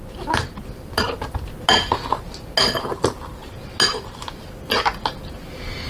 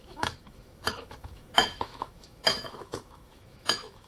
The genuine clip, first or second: first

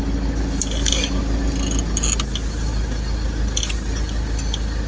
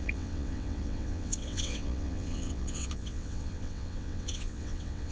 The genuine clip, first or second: first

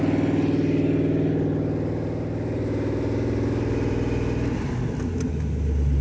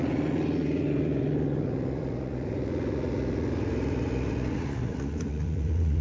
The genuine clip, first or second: first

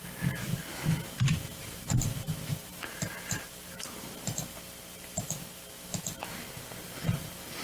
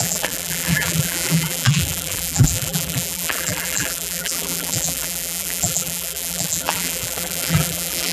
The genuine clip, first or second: first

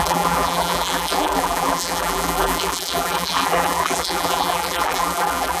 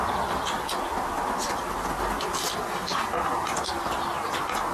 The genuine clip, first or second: second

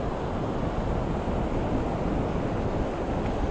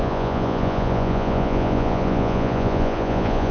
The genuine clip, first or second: first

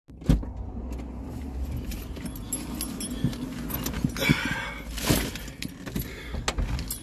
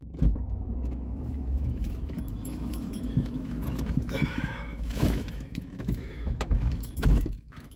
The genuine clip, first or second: first